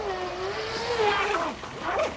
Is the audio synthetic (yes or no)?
no